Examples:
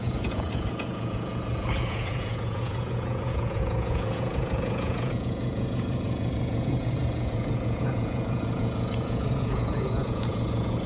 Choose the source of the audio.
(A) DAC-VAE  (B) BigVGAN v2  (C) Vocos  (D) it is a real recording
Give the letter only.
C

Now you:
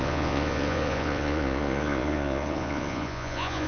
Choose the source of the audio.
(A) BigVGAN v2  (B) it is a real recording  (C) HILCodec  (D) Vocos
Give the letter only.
D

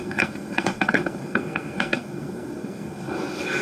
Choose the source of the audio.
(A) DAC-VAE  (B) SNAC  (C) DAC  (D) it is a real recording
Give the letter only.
B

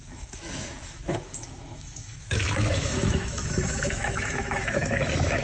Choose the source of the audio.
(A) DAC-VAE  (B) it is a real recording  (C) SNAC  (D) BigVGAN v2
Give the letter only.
A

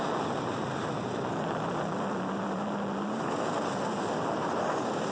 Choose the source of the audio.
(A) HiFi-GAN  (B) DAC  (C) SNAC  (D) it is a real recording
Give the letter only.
D